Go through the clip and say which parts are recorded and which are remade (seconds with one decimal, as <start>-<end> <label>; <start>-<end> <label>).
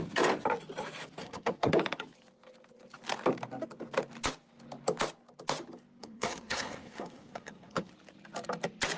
0.0-1.2 recorded; 1.2-1.7 remade; 1.7-6.0 recorded; 6.0-7.9 remade; 7.9-9.0 recorded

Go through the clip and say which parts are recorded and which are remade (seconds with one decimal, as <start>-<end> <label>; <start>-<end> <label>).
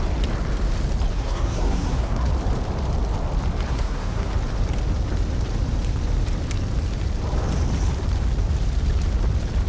0.0-1.1 recorded; 1.1-2.3 remade; 2.3-3.7 recorded; 3.7-4.3 remade; 4.3-9.7 recorded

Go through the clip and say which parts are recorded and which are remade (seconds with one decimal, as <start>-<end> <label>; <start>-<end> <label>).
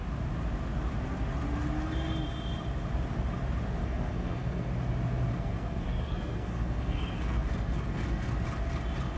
0.0-3.8 recorded; 3.8-4.7 remade; 4.7-5.3 recorded; 5.3-8.3 remade; 8.3-9.2 recorded